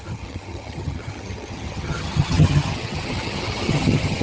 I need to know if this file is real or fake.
fake